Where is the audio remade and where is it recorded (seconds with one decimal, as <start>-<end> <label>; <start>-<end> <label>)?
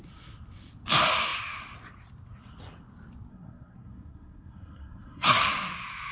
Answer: 0.0-3.3 recorded; 3.3-5.4 remade; 5.4-6.1 recorded